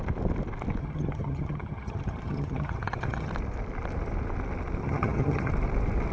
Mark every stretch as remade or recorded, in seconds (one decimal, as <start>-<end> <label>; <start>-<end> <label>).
0.0-0.8 recorded; 0.8-3.3 remade; 3.3-4.8 recorded; 4.8-5.5 remade; 5.5-6.1 recorded